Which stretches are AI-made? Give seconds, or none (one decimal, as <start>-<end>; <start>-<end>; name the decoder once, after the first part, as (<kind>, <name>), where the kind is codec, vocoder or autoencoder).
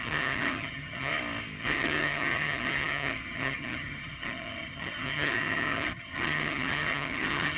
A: 0.0-1.1 (vocoder, HiFi-GAN); 1.6-7.6